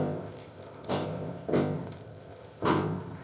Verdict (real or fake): fake